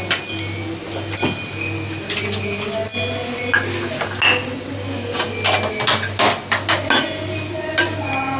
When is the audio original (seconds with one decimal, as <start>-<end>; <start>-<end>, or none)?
0.0-8.4